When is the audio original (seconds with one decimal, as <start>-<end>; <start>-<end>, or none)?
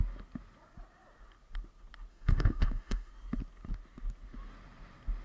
0.0-2.1; 3.1-5.2